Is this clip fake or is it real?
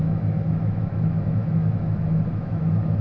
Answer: fake